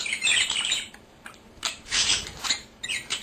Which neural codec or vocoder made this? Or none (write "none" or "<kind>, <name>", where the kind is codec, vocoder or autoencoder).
vocoder, BigVGAN v2